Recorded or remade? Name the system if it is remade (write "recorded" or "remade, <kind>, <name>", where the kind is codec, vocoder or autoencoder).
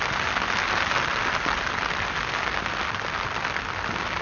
recorded